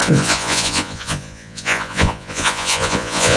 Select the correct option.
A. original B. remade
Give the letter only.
B